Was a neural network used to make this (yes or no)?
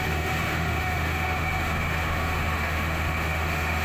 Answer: yes